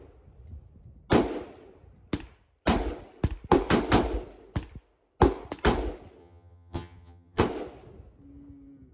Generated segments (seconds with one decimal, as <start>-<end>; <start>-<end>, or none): 6.2-7.4